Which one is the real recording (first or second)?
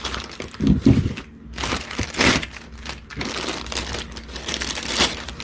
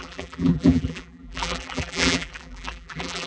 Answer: first